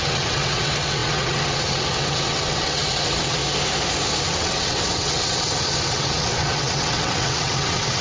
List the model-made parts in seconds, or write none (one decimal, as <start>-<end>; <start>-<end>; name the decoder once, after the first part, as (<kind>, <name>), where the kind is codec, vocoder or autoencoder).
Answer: 0.0-3.4 (vocoder, WaveNeXt); 4.2-8.0